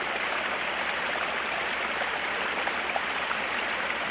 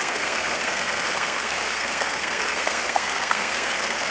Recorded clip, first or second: first